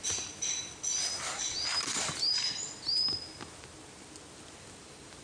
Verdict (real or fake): real